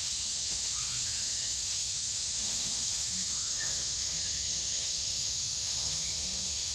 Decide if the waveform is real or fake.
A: fake